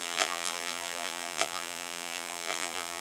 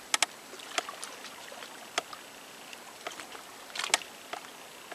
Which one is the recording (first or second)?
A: second